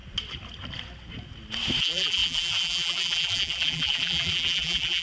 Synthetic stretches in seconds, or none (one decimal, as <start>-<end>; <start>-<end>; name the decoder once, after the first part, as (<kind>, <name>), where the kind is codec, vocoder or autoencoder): 1.8-5.0 (vocoder, BigVGAN v2)